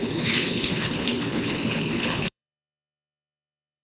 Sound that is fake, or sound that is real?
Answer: fake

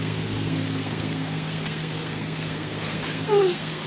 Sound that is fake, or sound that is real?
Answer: fake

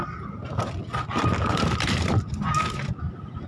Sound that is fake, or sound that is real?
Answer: real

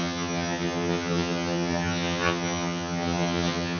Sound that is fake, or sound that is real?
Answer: fake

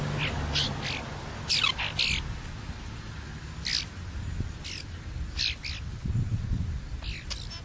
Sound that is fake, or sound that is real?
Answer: real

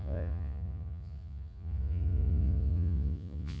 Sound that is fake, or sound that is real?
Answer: fake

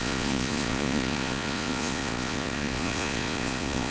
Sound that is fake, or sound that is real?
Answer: fake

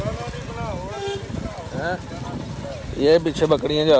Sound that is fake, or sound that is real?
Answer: real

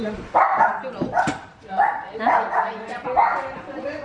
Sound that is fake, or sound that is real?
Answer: fake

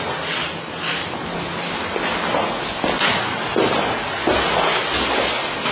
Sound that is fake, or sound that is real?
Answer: real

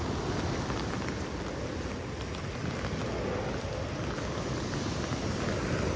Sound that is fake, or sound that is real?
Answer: real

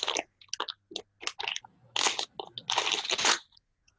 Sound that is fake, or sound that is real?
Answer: real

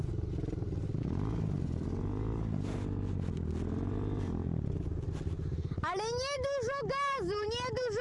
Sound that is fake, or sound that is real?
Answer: real